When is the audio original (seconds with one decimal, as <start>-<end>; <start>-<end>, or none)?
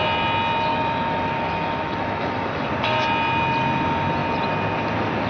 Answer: 0.0-0.7; 2.7-5.3